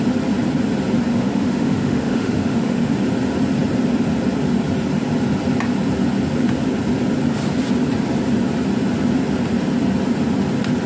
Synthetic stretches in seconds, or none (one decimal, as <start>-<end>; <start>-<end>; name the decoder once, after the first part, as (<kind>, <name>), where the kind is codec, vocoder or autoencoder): 1.1-2.9 (autoencoder, DAC-VAE)